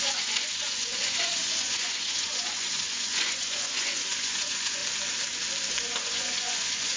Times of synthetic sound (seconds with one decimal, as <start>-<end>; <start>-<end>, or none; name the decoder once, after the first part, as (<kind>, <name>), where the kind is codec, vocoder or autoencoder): 0.0-4.8 (vocoder, Vocos); 5.7-7.0